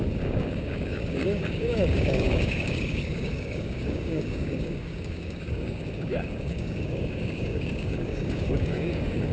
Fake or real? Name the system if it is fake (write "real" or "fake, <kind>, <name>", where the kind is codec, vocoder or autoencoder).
fake, codec, DAC